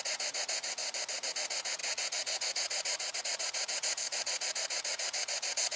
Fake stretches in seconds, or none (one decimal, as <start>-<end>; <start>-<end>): 0.0-0.8; 1.3-5.8